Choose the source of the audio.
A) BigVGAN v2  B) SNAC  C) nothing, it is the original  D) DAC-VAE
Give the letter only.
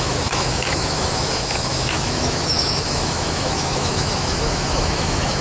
D